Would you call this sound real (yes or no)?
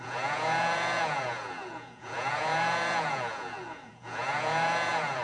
no